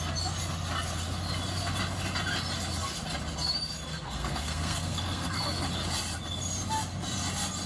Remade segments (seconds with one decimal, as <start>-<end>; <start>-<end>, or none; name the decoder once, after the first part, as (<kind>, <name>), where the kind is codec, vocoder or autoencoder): 3.9-5.4 (codec, SNAC)